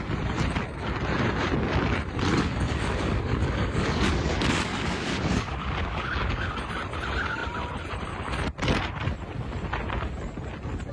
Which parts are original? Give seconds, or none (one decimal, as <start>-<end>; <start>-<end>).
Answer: 0.0-2.3; 6.5-10.9